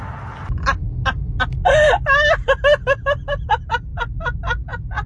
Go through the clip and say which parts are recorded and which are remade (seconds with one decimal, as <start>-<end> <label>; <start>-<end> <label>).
0.0-5.1 recorded